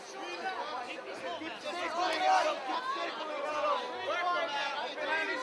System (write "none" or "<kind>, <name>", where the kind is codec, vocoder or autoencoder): none